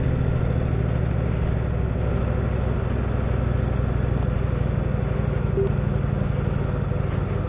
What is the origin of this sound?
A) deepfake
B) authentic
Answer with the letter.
B